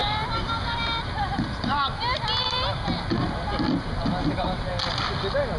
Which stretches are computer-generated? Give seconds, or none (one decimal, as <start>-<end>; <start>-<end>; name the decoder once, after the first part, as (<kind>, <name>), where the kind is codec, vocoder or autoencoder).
0.0-2.2 (vocoder, BigVGAN v2); 4.2-4.7